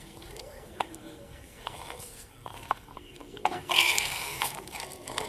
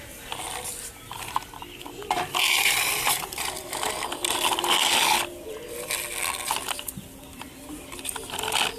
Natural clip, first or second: second